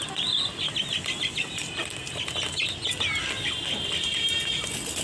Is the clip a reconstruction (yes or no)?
no